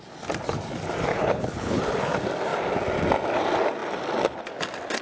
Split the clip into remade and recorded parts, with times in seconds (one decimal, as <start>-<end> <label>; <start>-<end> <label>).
0.0-1.1 recorded; 1.1-1.8 remade; 1.8-5.0 recorded